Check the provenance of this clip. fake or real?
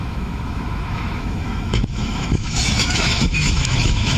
fake